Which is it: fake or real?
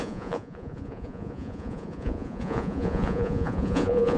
fake